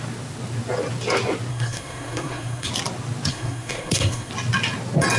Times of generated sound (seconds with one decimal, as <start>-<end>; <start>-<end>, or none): 1.5-2.7; 3.3-4.3